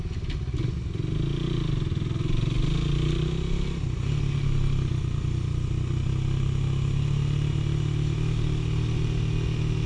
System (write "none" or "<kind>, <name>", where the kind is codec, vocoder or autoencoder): none